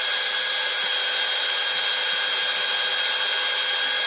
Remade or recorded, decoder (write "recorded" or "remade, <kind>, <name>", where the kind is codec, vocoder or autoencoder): recorded